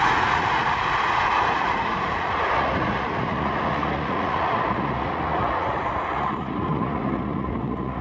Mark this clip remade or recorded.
remade